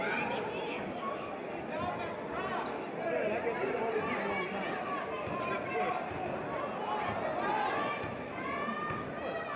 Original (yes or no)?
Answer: yes